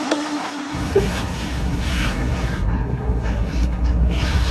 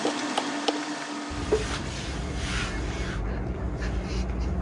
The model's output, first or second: first